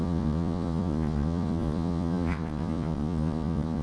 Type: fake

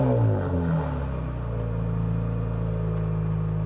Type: real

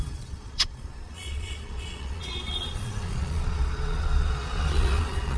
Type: fake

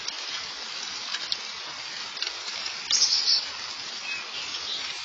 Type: real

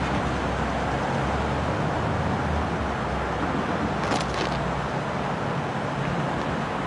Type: real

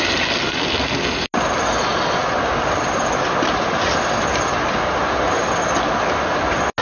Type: real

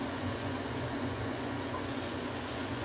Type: fake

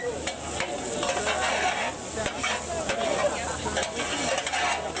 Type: real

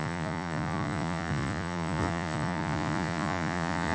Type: fake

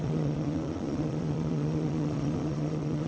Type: fake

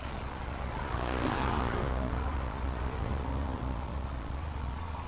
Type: fake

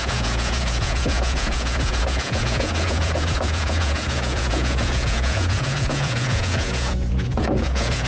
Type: fake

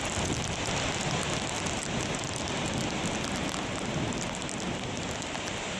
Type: real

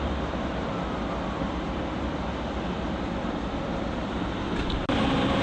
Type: real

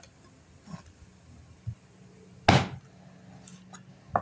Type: real